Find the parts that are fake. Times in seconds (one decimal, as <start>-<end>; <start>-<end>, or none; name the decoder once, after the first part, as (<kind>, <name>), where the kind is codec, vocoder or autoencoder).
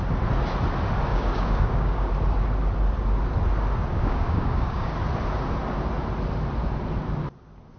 1.1-2.1 (codec, DAC); 3.9-4.9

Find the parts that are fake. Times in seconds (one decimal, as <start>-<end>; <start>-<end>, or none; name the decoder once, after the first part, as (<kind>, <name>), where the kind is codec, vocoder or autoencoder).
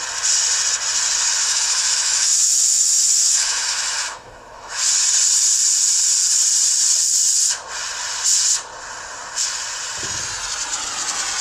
1.4-4.9 (autoencoder, DAC-VAE)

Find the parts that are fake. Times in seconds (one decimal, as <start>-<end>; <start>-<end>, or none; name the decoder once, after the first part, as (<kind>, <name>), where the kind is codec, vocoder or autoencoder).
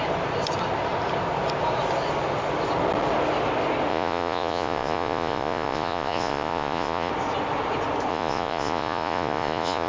3.9-7.1 (vocoder, Vocos); 8.1-9.9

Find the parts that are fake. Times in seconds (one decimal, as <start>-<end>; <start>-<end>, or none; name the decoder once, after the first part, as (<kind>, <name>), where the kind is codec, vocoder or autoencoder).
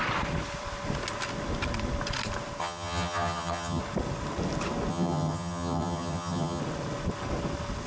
2.6-3.8 (vocoder, HiFi-GAN); 4.9-6.6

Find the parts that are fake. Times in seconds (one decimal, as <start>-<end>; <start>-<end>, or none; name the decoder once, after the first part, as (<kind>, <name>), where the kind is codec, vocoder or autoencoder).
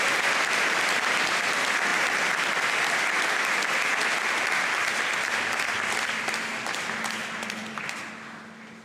7.2-8.1 (vocoder, BigVGAN v2)